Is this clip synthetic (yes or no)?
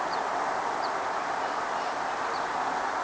no